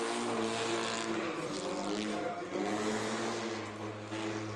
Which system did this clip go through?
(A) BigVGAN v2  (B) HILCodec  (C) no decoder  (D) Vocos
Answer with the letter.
C